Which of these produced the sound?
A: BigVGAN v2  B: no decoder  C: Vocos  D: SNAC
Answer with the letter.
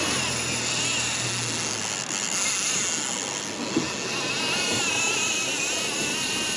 B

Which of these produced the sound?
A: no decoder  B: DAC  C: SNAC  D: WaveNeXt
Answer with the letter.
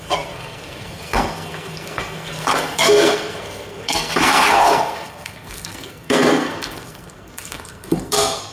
C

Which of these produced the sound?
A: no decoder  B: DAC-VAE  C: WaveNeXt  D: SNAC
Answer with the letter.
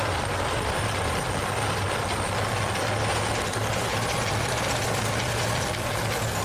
A